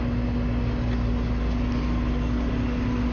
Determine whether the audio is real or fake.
real